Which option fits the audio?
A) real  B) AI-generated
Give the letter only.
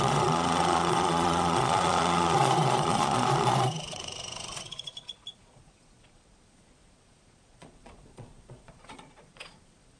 B